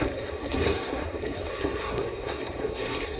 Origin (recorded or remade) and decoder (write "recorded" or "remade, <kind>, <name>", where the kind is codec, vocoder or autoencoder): remade, codec, SNAC